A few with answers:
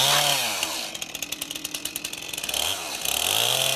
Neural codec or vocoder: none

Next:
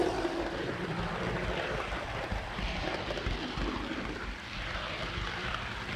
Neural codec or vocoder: vocoder, BigVGAN v2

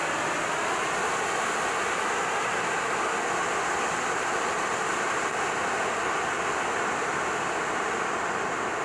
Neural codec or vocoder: none